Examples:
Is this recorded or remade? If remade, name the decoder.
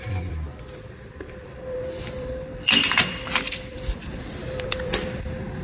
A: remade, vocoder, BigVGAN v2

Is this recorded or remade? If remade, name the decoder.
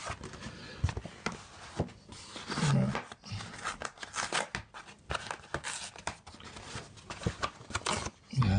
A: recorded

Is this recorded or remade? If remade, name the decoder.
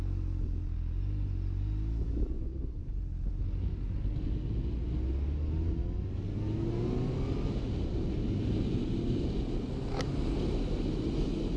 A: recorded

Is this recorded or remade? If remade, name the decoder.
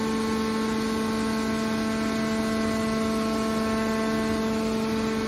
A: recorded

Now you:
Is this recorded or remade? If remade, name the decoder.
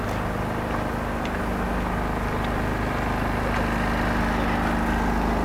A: recorded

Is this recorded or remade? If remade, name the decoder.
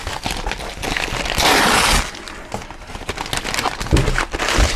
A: recorded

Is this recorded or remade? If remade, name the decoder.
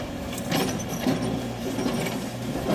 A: remade, vocoder, BigVGAN v2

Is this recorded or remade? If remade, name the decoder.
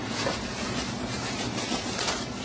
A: remade, vocoder, BigVGAN v2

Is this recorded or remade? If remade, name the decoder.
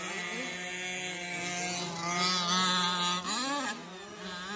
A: recorded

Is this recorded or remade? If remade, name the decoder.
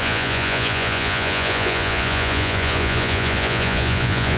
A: remade, vocoder, Vocos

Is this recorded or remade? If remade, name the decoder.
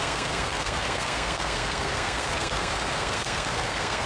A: remade, codec, SNAC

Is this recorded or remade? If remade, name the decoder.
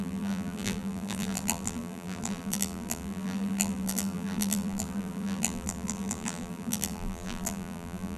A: remade, vocoder, BigVGAN v2